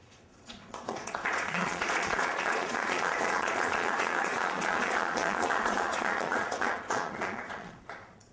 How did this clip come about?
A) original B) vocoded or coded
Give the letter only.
B